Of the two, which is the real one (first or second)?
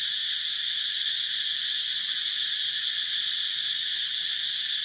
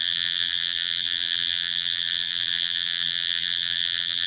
first